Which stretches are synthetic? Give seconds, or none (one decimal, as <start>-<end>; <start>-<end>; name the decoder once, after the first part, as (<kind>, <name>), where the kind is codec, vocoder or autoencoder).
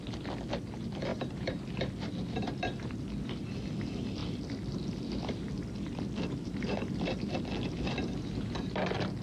1.1-1.6 (vocoder, BigVGAN v2)